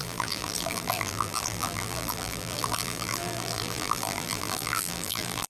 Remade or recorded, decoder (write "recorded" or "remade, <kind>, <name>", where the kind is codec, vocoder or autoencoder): remade, vocoder, BigVGAN v2